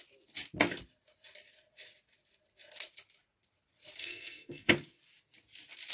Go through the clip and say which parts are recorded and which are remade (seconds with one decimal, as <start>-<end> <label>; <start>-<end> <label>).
0.0-4.0 recorded; 4.0-4.7 remade; 4.7-5.9 recorded